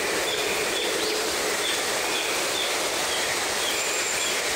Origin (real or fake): real